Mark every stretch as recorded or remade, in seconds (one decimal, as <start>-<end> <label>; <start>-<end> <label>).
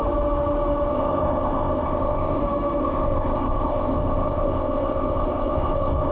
0.0-0.9 recorded; 0.9-2.4 remade; 2.4-2.8 recorded; 2.8-6.1 remade